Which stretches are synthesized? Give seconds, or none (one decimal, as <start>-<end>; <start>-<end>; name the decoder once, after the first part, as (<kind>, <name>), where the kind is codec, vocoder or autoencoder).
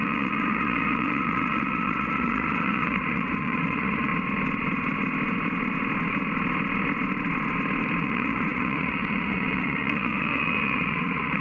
0.0-4.1 (vocoder, Vocos); 8.0-11.4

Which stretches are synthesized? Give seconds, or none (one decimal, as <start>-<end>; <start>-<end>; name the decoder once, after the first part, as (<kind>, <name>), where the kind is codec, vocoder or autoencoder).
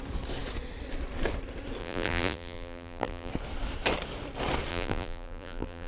1.8-3.3 (vocoder, BigVGAN v2); 4.7-5.9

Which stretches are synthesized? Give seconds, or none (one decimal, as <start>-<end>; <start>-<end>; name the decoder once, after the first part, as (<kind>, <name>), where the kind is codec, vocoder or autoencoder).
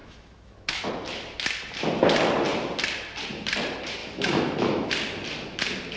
0.0-0.9 (autoencoder, DAC-VAE); 4.0-4.9